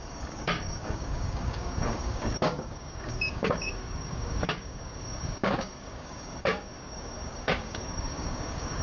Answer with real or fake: fake